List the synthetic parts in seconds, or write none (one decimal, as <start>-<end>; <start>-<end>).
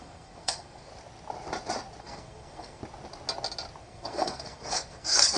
0.0-0.9; 2.0-2.8; 3.8-5.4